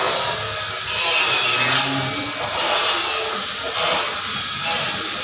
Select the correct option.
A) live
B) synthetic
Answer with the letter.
A